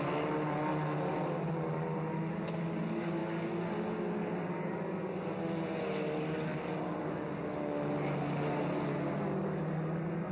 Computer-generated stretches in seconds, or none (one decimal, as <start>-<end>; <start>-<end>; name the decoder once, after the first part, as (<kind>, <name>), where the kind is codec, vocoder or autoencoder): none